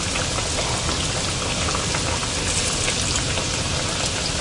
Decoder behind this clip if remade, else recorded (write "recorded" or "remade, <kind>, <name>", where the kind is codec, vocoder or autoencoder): recorded